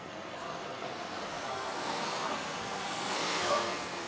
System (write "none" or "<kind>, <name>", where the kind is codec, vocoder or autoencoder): codec, SNAC